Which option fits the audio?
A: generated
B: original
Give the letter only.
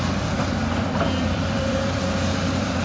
A